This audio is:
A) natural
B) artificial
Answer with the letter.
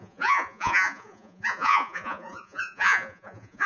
B